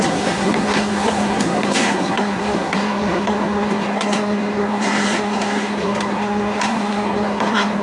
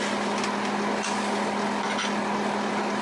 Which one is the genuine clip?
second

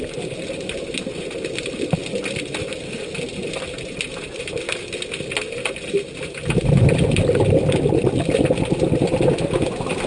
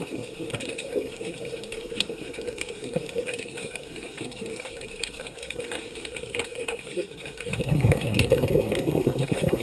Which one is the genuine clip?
first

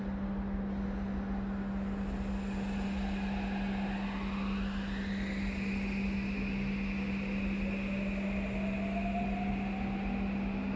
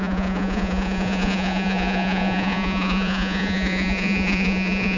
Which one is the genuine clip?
first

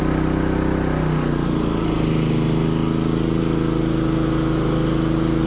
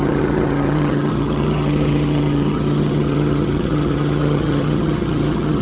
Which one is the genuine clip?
first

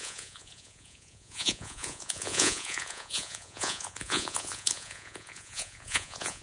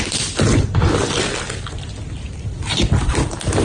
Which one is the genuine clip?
second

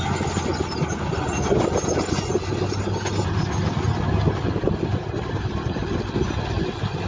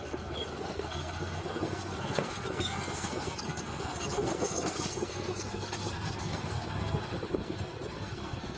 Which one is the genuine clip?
first